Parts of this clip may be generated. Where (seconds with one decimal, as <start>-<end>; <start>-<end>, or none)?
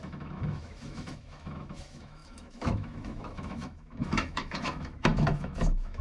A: 0.0-6.0